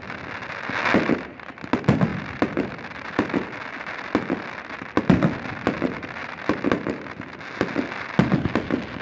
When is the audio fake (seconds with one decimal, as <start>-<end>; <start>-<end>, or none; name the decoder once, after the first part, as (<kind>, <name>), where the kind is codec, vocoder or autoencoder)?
6.2-6.9 (vocoder, BigVGAN v2)